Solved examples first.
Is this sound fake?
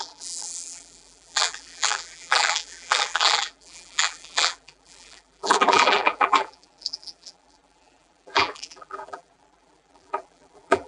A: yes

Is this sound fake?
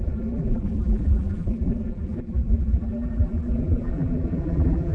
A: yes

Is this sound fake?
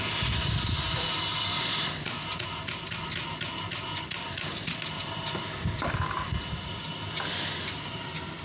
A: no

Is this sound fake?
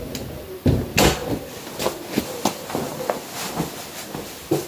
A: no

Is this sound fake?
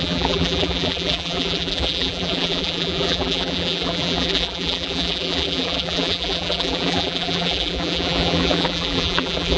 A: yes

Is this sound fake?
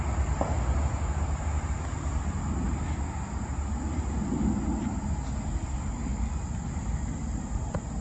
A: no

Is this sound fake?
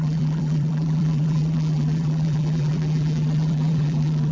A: yes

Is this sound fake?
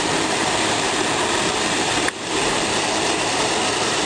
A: yes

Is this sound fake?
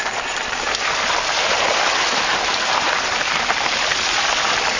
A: yes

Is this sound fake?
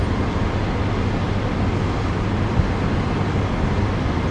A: no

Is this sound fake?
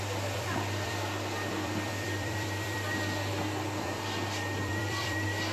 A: yes